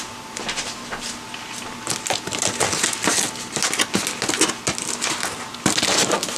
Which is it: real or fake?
real